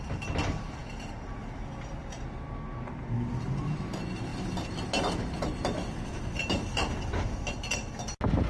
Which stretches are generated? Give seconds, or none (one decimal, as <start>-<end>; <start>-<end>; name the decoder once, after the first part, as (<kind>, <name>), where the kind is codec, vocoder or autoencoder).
none